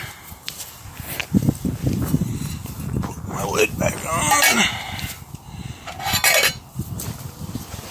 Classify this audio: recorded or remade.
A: recorded